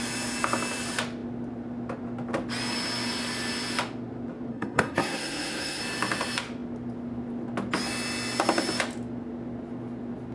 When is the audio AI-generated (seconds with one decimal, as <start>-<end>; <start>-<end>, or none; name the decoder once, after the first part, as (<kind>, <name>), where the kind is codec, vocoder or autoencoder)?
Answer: 4.5-5.8 (codec, SNAC)